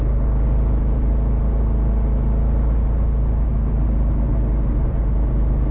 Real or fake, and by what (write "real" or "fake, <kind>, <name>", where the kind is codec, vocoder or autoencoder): real